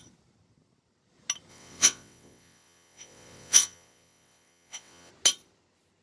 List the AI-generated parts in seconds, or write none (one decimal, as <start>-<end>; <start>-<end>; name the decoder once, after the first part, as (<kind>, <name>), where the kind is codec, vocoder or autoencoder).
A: 1.5-5.1 (vocoder, WaveNeXt)